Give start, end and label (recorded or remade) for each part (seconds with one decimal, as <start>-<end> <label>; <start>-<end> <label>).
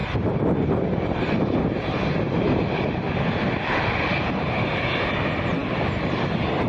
0.0-6.7 recorded